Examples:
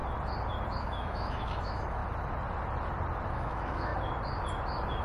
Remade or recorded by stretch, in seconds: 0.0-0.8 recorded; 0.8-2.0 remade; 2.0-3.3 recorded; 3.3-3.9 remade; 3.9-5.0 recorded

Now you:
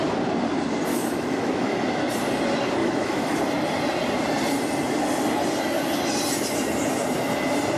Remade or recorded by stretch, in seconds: 0.0-0.9 recorded; 0.9-2.1 remade; 2.1-2.8 recorded; 2.8-3.4 remade; 3.4-7.8 recorded

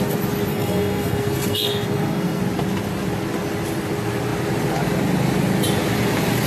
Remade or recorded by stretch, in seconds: 0.0-0.5 recorded; 0.5-2.4 remade; 2.4-6.5 recorded

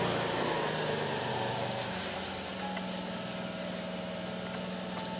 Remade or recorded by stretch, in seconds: 0.0-1.3 recorded; 1.3-2.1 remade; 2.1-5.2 recorded